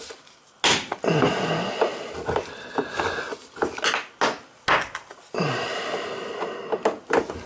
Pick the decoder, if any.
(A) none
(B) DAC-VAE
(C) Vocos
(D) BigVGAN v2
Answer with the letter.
A